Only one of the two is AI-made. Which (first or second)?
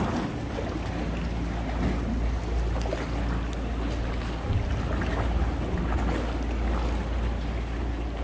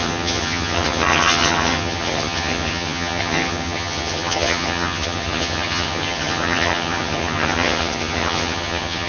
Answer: second